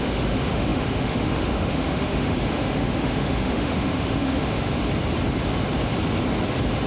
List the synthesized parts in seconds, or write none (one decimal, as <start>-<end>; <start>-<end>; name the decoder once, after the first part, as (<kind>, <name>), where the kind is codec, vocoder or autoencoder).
0.0-4.8 (autoencoder, DAC-VAE)